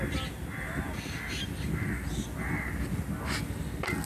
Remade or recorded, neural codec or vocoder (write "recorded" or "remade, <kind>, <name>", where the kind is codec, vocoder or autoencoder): recorded